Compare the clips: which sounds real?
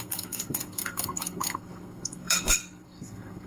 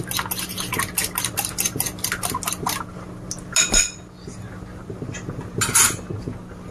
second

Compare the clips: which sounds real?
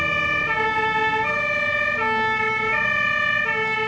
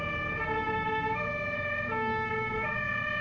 first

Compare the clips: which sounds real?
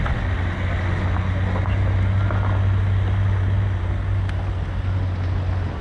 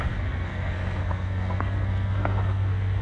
first